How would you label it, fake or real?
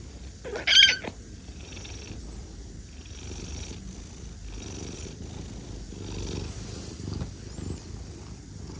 real